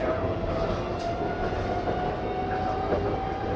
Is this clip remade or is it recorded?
recorded